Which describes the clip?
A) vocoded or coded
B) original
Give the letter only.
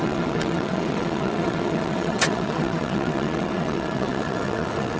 A